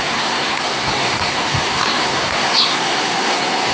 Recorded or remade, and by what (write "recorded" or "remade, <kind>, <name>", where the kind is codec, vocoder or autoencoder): remade, codec, SNAC